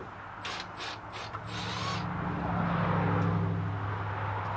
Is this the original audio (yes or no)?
yes